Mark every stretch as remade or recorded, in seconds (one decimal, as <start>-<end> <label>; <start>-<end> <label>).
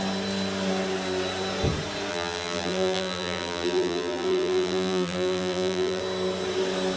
0.0-2.1 recorded; 2.1-6.0 remade; 6.0-7.0 recorded